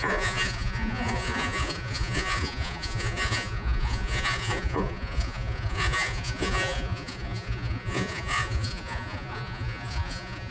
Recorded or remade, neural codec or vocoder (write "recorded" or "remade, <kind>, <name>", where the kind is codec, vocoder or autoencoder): remade, vocoder, Vocos